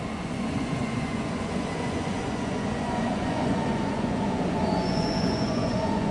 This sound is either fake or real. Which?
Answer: fake